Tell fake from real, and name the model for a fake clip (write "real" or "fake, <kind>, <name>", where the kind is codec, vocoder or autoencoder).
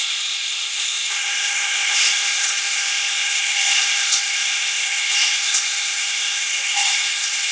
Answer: fake, codec, ZipCodec